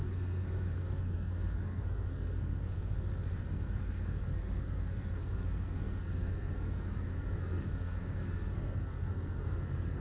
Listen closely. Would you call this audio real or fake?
fake